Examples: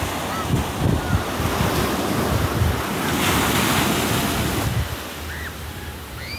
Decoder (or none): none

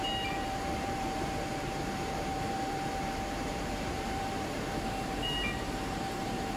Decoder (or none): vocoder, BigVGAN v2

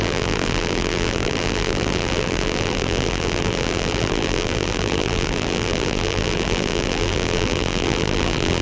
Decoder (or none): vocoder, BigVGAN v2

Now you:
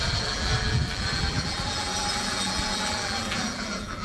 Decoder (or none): vocoder, BigVGAN v2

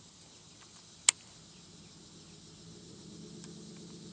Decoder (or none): none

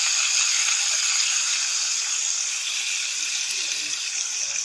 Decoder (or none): none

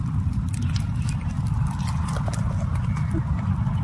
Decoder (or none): vocoder, BigVGAN v2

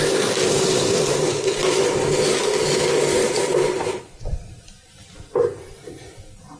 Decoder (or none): none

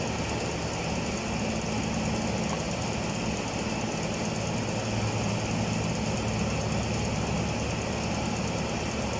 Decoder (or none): none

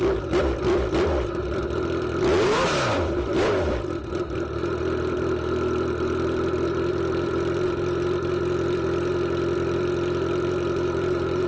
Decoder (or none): vocoder, BigVGAN v2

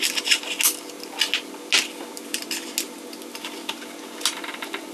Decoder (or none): none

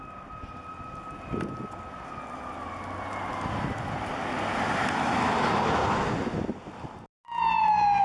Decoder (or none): none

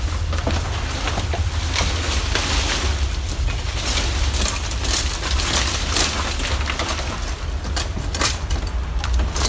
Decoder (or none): none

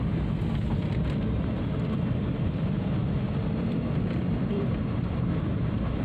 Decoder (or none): vocoder, BigVGAN v2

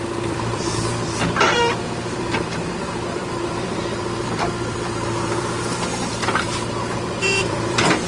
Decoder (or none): vocoder, BigVGAN v2